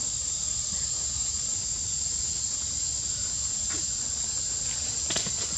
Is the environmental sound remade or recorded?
recorded